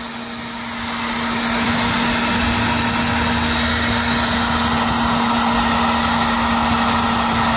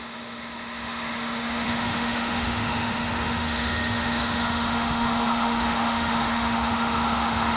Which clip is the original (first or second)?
first